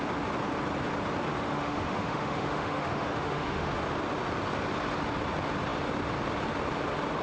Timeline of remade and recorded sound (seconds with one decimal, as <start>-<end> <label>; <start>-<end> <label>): 0.0-1.3 recorded; 1.3-3.7 remade; 3.7-7.2 recorded

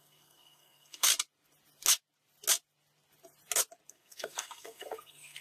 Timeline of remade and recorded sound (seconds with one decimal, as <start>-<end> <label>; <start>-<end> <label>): 0.0-1.1 remade; 1.1-3.9 recorded; 3.9-5.4 remade

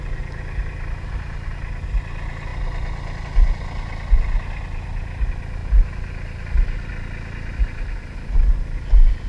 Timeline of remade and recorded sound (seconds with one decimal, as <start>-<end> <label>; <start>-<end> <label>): 0.0-9.3 recorded

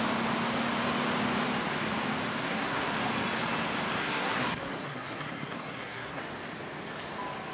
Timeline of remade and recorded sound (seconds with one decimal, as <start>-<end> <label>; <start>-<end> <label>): 0.0-2.4 recorded; 2.4-2.9 remade; 2.9-4.0 recorded; 4.0-6.2 remade; 6.2-7.5 recorded

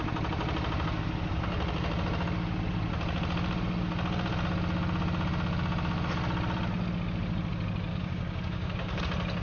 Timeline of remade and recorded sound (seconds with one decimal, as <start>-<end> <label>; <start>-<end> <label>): 0.0-7.9 recorded; 7.9-9.0 remade; 9.0-9.4 recorded